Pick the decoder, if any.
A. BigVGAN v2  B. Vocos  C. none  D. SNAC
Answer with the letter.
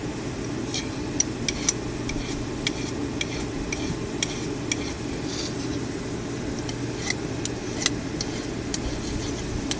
C